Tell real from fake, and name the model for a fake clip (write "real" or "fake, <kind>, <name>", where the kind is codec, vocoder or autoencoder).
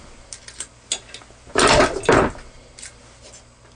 real